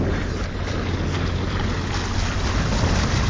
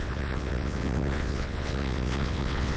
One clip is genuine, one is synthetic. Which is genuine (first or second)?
first